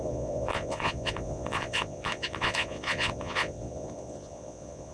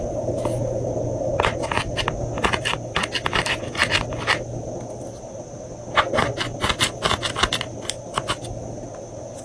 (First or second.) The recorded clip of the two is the second